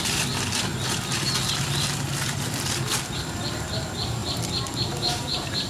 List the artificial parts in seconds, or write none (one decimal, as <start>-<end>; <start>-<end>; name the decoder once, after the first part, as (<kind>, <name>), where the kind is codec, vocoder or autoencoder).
none